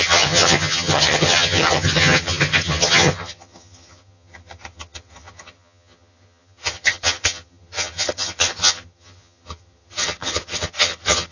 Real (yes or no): no